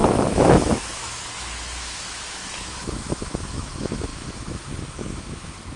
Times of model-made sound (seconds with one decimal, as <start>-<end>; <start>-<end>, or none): 0.0-5.8